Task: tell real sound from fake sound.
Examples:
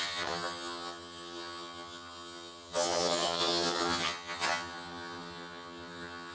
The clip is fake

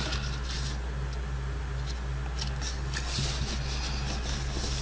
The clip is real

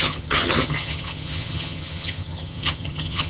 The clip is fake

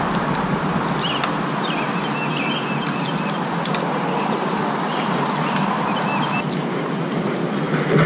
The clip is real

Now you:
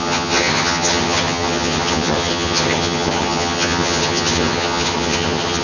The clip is fake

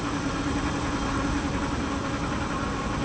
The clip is real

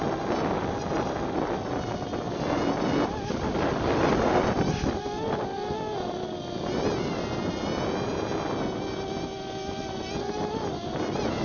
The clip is real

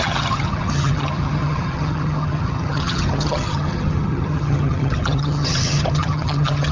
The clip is fake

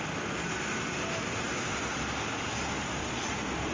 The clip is real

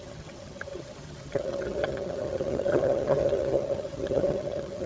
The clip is fake